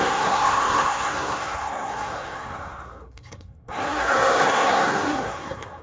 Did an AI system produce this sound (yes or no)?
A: yes